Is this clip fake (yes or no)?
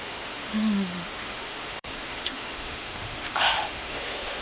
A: yes